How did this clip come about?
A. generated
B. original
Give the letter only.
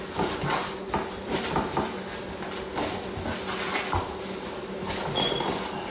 B